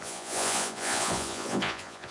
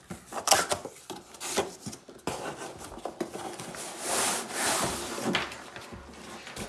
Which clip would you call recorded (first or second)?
second